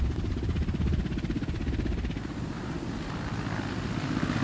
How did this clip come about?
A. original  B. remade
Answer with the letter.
A